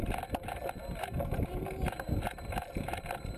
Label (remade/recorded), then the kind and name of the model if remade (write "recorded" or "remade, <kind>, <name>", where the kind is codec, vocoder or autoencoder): recorded